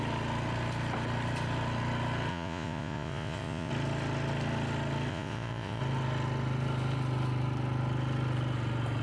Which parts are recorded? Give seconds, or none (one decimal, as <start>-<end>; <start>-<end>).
0.0-2.3; 3.7-5.1; 5.8-9.0